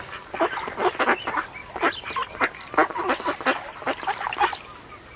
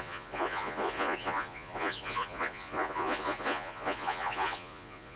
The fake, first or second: second